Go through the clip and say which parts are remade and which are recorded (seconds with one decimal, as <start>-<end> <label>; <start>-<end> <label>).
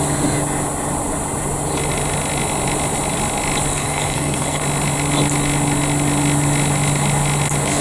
0.0-3.7 recorded; 3.7-4.6 remade; 4.6-7.8 recorded